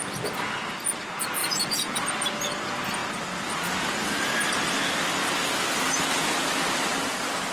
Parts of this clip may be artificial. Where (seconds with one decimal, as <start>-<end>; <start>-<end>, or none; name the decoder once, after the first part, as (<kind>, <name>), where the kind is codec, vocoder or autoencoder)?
1.4-2.1 (vocoder, Vocos)